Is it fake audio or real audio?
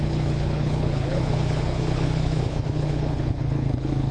fake